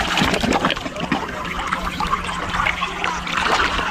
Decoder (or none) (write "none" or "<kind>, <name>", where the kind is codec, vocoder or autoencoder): none